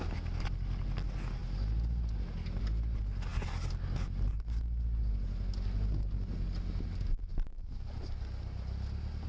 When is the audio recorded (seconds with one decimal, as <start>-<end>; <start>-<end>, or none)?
0.0-9.3